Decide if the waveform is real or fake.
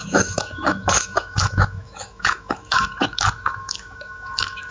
fake